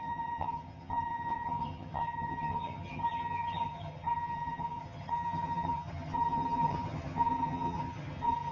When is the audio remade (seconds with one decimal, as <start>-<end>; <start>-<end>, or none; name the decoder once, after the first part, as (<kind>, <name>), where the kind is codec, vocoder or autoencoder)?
0.0-8.5 (vocoder, HiFi-GAN)